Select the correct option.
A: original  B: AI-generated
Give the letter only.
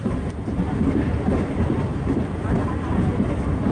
A